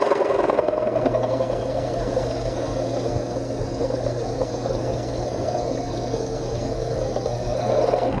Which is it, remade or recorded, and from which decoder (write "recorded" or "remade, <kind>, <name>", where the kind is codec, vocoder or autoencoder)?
remade, codec, SNAC